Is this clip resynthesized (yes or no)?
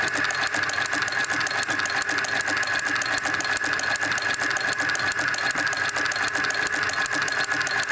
no